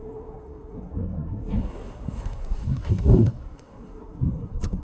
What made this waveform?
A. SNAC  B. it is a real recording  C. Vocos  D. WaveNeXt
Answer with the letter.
A